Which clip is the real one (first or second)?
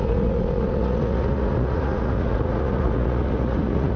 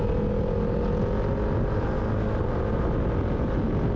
second